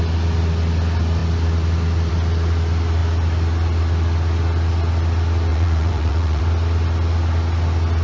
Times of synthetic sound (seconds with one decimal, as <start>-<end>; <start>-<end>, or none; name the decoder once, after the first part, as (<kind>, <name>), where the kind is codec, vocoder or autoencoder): 5.5-6.4 (vocoder, Vocos)